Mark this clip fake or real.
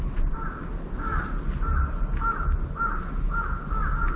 real